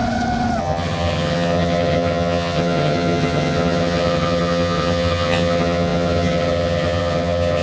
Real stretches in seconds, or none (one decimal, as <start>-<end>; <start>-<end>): 0.0-0.6